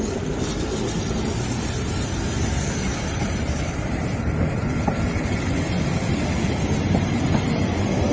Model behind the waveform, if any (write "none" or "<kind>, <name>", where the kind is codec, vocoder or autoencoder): none